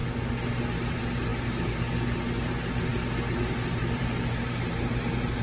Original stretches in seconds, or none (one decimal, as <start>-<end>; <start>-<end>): 0.0-5.4